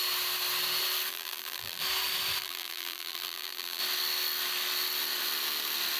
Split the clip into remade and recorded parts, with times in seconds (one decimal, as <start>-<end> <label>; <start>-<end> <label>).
0.0-1.1 recorded; 1.1-1.8 remade; 1.8-2.4 recorded; 2.4-3.8 remade; 3.8-6.0 recorded